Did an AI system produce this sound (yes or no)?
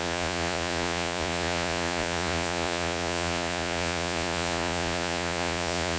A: yes